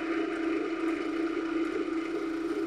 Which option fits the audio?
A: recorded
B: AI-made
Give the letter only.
A